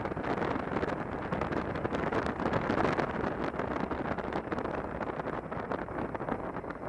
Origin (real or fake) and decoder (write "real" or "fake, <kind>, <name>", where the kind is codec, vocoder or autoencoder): real